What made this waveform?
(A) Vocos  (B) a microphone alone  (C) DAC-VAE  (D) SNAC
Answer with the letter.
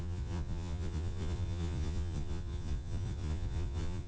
A